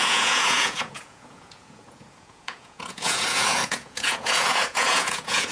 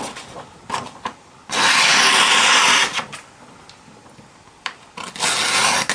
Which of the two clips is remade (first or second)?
first